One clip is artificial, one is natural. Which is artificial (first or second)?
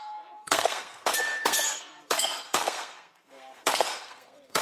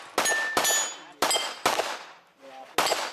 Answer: first